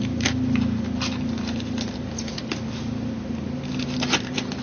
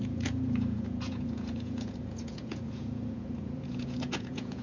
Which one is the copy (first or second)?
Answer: second